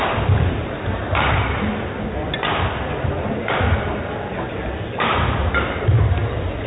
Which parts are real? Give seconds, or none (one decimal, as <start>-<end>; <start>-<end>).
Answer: 0.0-6.7